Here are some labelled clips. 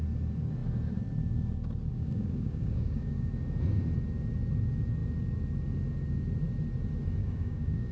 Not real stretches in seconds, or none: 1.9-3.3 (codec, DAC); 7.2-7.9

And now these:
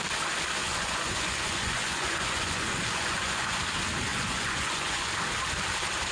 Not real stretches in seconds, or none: 0.6-3.6 (vocoder, Vocos); 4.1-5.1

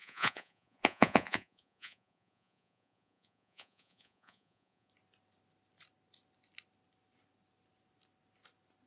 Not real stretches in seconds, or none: 0.0-4.9 (vocoder, Vocos)

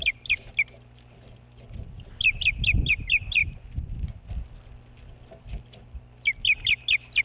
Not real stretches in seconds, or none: 3.4-4.3 (vocoder, Vocos)

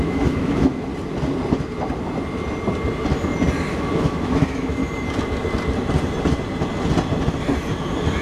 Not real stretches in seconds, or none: 0.0-0.9 (autoencoder, DAC-VAE); 3.6-4.8

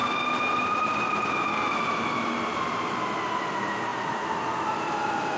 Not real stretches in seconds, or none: none